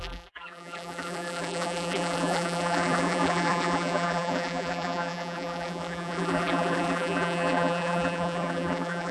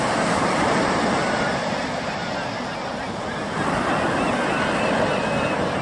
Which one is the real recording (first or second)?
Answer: second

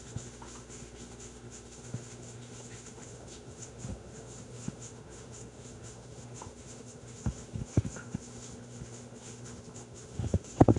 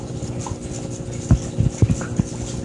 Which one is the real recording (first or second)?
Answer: second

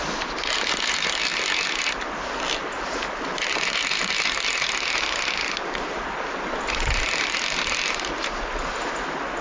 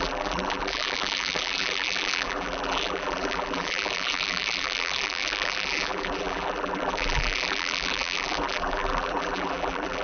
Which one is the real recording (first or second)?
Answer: first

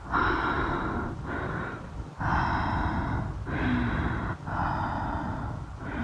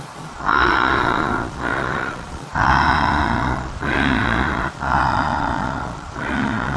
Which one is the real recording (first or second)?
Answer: first